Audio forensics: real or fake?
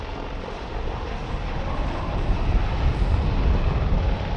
real